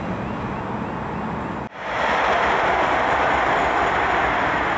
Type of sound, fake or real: real